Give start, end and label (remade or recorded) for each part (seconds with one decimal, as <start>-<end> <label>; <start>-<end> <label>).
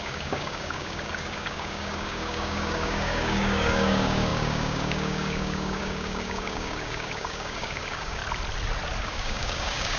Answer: 0.0-8.2 remade; 8.2-9.0 recorded; 9.0-10.0 remade